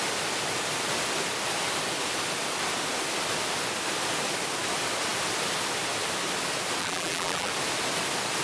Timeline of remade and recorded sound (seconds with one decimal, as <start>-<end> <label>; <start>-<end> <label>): 0.0-6.8 recorded; 6.8-7.5 remade; 7.5-8.4 recorded